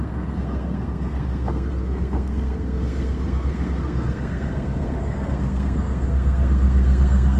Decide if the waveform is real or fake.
fake